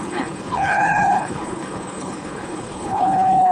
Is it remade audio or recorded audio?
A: remade